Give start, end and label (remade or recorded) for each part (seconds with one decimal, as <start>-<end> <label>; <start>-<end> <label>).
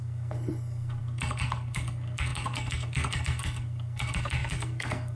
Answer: 0.0-5.2 remade